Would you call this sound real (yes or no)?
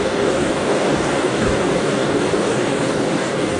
no